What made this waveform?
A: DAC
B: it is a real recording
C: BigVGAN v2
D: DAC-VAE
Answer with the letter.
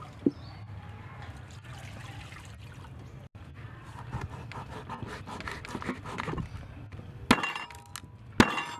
B